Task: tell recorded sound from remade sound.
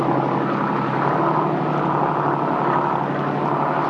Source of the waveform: recorded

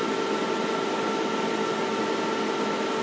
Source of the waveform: recorded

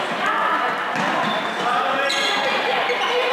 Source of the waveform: recorded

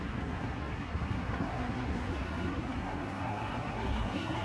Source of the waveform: remade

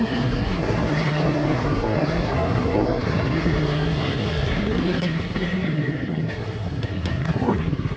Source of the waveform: remade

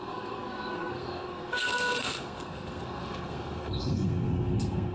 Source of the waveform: remade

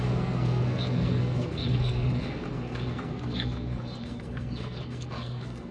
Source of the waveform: remade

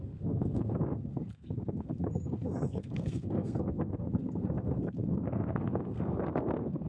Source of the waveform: remade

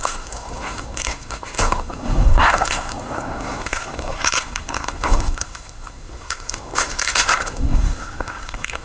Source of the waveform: remade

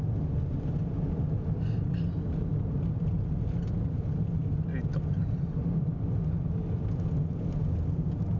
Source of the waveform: recorded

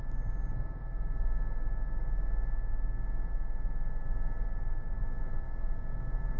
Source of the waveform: recorded